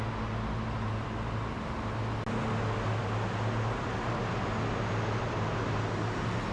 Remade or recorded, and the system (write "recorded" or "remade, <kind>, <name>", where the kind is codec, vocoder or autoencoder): recorded